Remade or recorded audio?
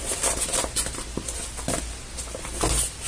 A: recorded